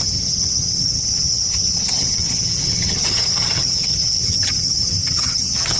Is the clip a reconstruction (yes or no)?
yes